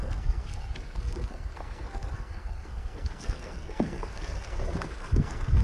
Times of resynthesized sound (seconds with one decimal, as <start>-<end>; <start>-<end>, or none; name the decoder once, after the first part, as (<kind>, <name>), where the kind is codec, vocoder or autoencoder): 0.0-5.6 (codec, SNAC)